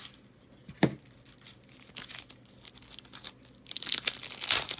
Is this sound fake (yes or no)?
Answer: no